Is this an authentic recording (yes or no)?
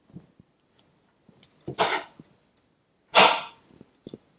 yes